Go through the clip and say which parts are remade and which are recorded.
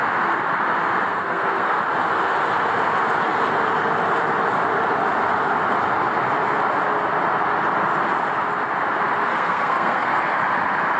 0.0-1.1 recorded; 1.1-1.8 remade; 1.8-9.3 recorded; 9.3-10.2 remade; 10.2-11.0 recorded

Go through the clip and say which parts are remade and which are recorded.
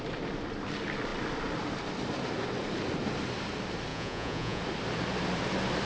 0.0-3.9 recorded; 3.9-4.6 remade; 4.6-5.9 recorded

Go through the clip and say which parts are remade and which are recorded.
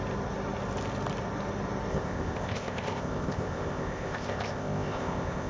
0.0-1.9 recorded; 1.9-5.5 remade